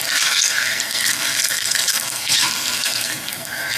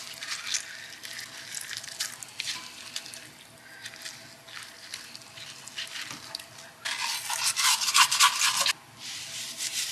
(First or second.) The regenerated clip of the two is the first